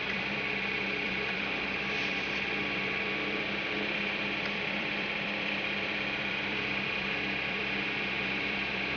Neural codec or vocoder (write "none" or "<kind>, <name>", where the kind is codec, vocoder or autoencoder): vocoder, BigVGAN v2